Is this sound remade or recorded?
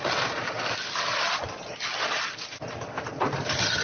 recorded